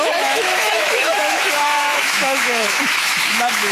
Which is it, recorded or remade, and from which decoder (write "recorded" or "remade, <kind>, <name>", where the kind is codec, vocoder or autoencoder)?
remade, autoencoder, DAC-VAE